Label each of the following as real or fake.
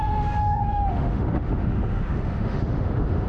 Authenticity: fake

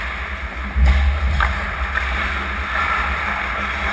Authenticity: real